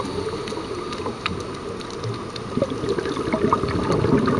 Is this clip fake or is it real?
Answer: real